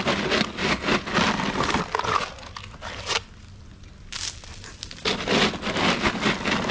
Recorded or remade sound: recorded